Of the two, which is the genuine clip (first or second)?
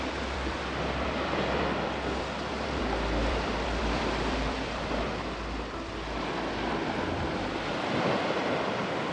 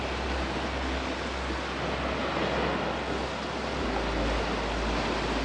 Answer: second